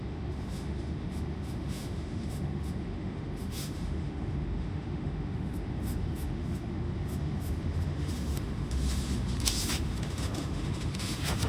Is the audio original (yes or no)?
no